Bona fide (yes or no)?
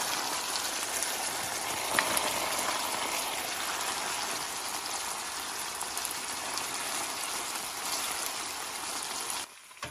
yes